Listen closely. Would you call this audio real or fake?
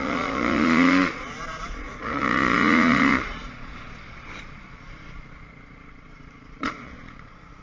fake